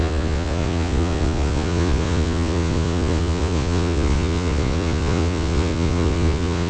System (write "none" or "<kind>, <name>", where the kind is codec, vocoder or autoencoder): vocoder, Vocos